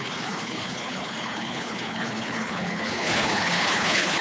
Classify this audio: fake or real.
fake